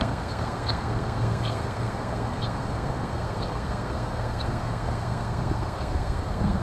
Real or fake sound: fake